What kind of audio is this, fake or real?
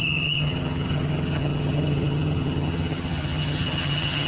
fake